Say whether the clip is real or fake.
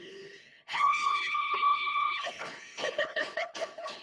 fake